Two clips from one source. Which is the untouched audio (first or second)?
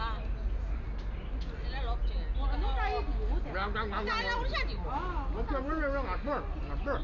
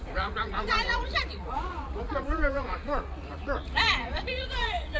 first